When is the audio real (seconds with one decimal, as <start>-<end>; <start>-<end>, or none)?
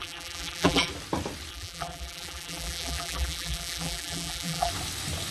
0.9-1.5; 4.7-5.3